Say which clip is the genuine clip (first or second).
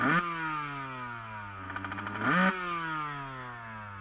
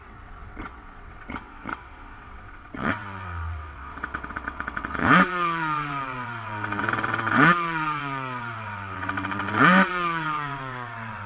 first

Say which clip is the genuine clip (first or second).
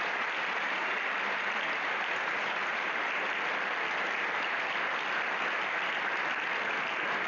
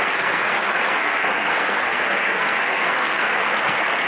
first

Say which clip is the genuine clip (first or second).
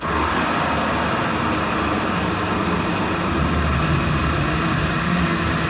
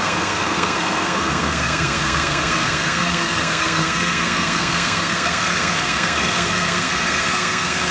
first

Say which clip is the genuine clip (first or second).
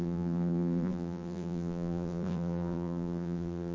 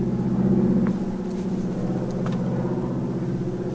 second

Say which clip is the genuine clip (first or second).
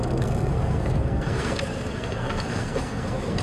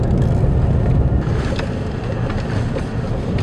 second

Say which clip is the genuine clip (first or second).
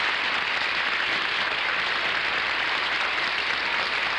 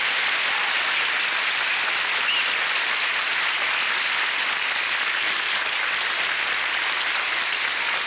second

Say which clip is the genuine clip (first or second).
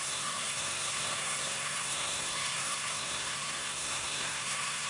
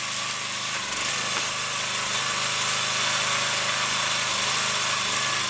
second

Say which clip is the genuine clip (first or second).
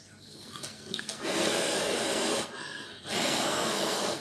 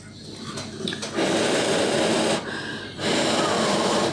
second